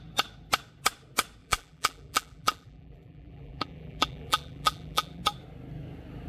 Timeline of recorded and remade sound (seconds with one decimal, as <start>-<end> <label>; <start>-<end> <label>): 0.0-1.4 recorded; 1.4-5.2 remade; 5.2-6.3 recorded